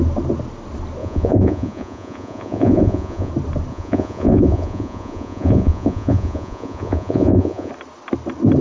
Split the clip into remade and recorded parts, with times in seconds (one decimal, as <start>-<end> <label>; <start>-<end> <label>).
0.0-1.0 recorded; 1.0-3.3 remade; 3.3-3.7 recorded; 3.7-7.7 remade; 7.7-8.6 recorded